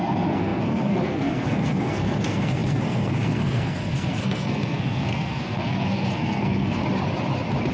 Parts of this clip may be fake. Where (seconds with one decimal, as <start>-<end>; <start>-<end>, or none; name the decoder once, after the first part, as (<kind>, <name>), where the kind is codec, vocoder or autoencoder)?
0.0-6.8 (codec, SNAC)